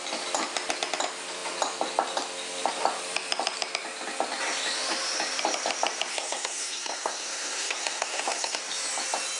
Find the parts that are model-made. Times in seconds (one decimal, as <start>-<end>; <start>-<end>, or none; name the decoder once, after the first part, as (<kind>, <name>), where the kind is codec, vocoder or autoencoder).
6.1-8.6 (codec, SNAC)